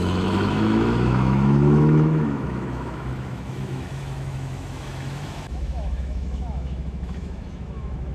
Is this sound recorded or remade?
remade